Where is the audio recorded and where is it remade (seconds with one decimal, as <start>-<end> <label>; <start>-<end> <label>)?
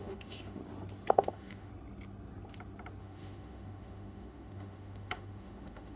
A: 0.0-0.6 remade; 0.6-1.1 recorded; 1.1-1.7 remade; 1.7-3.0 recorded; 3.0-6.0 remade